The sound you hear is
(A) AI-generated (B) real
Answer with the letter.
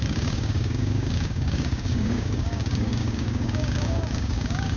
A